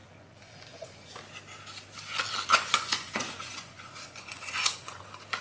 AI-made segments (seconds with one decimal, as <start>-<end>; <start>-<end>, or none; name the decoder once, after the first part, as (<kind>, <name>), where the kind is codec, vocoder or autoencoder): 0.0-1.2 (vocoder, Vocos); 2.5-5.0